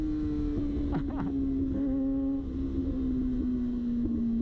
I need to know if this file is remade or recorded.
recorded